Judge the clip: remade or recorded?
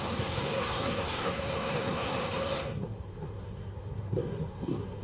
remade